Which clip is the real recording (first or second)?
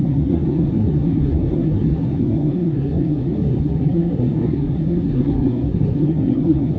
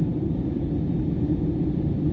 second